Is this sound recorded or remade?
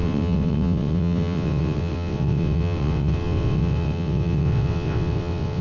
remade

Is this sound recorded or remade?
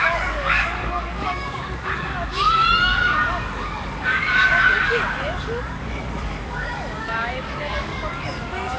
remade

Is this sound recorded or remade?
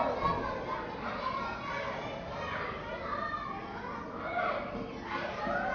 recorded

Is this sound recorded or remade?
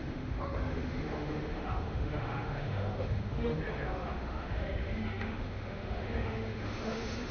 remade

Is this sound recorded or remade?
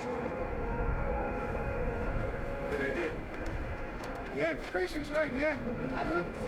remade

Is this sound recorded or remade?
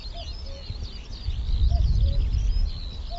recorded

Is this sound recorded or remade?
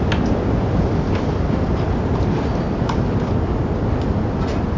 recorded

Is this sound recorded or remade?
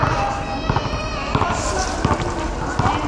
recorded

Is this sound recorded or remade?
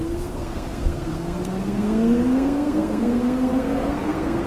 remade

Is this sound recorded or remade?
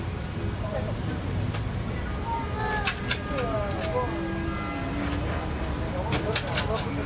recorded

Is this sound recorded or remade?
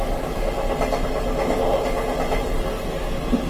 recorded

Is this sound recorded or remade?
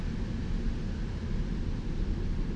recorded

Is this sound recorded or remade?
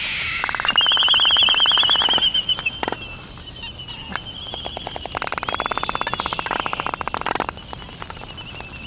recorded